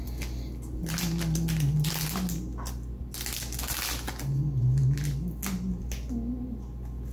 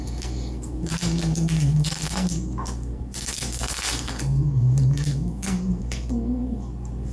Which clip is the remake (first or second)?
second